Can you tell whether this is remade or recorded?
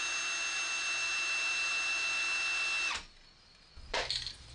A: recorded